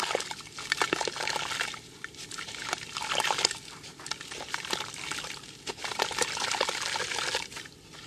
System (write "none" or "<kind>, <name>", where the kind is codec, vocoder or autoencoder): vocoder, BigVGAN v2